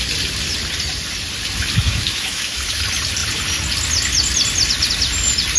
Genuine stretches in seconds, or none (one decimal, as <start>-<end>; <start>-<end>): 0.0-1.9; 2.8-5.6